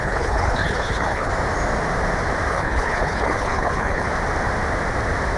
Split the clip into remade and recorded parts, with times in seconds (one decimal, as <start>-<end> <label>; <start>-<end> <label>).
0.0-1.3 remade; 1.3-2.5 recorded; 2.5-4.1 remade; 4.1-5.4 recorded